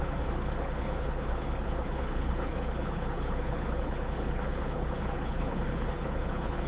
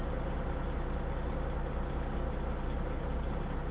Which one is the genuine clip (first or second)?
second